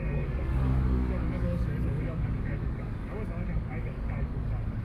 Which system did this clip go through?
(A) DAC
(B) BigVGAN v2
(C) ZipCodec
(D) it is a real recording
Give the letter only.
A